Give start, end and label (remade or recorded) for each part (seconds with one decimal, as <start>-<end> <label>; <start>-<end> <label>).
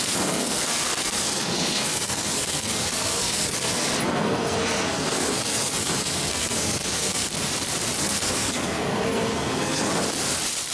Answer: 0.0-7.3 remade; 7.3-8.0 recorded; 8.0-9.9 remade; 9.9-10.7 recorded